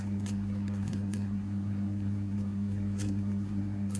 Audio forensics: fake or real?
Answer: fake